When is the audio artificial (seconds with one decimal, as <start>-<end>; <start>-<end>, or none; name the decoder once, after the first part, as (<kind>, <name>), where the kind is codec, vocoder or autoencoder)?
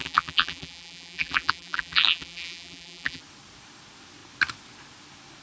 0.0-3.2 (vocoder, BigVGAN v2)